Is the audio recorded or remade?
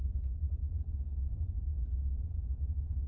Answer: remade